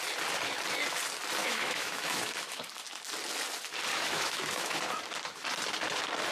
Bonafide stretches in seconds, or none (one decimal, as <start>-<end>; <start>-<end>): 0.0-1.4; 2.6-3.9; 4.8-6.3